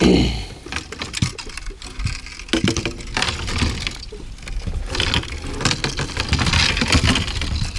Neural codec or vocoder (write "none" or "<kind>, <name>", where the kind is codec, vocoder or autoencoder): none